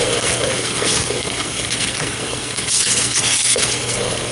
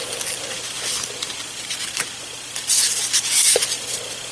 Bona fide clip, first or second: second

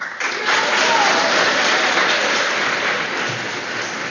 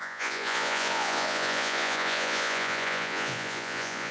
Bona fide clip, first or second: first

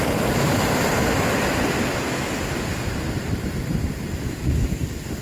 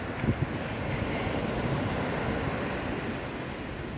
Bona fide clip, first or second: second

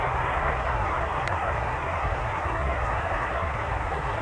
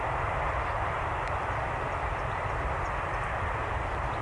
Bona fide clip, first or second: second